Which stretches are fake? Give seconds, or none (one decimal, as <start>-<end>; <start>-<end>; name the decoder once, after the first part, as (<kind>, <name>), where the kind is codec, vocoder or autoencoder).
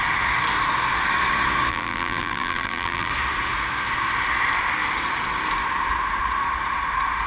1.7-3.1 (vocoder, BigVGAN v2)